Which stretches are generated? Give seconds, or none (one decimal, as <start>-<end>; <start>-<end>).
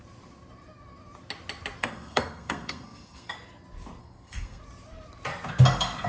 1.8-3.3; 4.0-4.6